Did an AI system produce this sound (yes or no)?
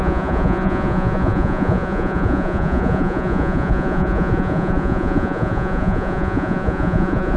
yes